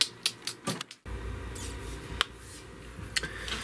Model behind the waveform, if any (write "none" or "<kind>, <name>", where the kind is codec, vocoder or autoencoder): none